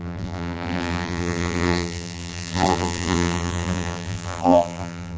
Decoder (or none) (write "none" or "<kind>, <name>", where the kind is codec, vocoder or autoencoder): vocoder, BigVGAN v2